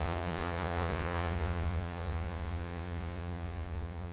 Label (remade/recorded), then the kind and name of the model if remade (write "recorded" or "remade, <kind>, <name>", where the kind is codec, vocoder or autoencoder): remade, vocoder, Vocos